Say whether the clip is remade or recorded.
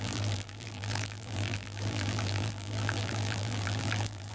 remade